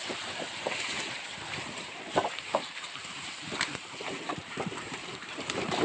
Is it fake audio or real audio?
fake